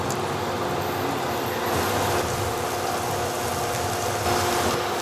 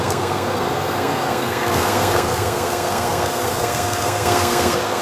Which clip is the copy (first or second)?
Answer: second